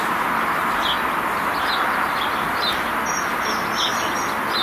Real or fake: real